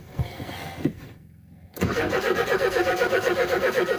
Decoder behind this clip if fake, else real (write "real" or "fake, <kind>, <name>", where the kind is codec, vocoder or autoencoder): fake, codec, SNAC